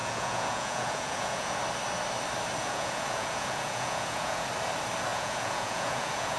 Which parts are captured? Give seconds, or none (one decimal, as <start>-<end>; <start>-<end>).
1.6-2.6; 4.5-5.1